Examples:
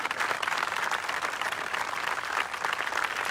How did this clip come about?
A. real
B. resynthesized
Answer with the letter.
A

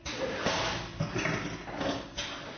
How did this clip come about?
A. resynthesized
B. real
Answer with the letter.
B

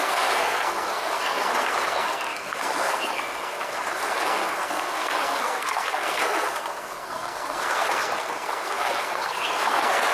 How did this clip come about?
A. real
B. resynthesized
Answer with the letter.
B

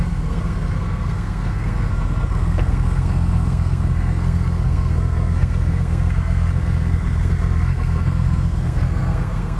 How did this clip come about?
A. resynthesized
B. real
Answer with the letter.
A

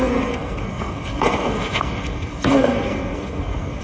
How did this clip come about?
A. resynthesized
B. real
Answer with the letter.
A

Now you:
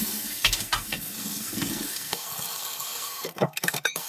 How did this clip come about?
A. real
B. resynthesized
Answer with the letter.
B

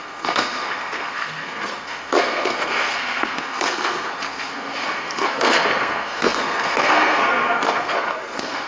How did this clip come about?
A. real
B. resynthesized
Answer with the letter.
B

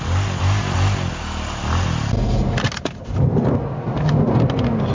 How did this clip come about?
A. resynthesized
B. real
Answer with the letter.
B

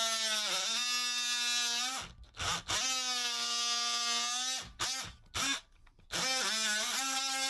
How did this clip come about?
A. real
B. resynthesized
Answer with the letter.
A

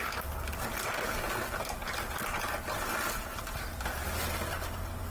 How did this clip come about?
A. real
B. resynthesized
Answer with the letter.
A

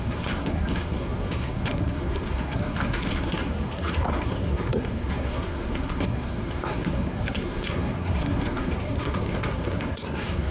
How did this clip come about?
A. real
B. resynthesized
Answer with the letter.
B